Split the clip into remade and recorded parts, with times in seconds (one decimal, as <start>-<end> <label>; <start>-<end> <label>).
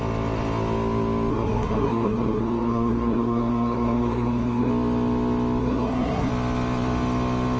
0.0-1.3 recorded; 1.3-4.7 remade; 4.7-5.6 recorded; 5.6-6.3 remade; 6.3-7.6 recorded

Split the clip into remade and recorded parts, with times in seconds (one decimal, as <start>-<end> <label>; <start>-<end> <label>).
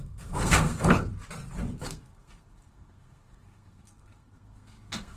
0.0-1.1 remade; 1.1-1.8 recorded; 1.8-5.2 remade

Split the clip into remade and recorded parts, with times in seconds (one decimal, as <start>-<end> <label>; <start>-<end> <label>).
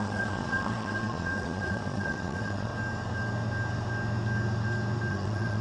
0.0-2.7 remade; 2.7-5.1 recorded; 5.1-5.6 remade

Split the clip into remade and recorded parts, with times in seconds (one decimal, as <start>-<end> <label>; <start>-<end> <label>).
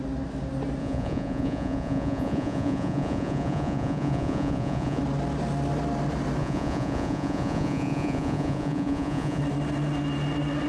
0.0-0.8 recorded; 0.8-5.0 remade; 5.0-6.4 recorded; 6.4-9.4 remade; 9.4-10.7 recorded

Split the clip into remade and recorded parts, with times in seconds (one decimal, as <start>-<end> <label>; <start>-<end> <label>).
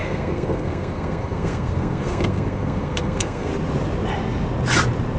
0.0-3.5 remade; 3.5-5.2 recorded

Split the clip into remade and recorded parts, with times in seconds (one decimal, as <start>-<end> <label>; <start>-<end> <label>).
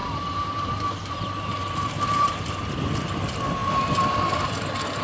0.0-2.5 remade; 2.5-5.0 recorded